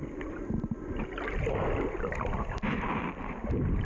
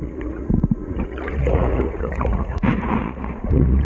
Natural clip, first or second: first